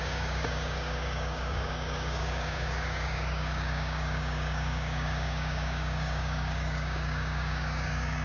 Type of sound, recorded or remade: remade